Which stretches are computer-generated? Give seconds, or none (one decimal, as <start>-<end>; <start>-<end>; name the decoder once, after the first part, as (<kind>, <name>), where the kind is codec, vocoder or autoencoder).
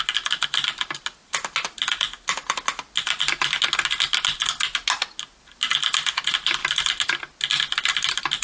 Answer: none